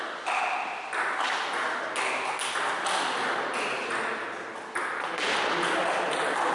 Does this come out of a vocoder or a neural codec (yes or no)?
no